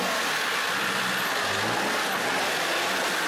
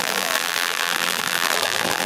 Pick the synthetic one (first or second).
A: second